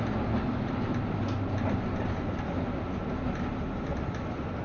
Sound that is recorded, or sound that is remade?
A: recorded